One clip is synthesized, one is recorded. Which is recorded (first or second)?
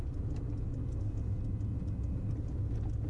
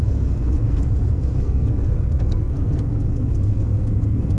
first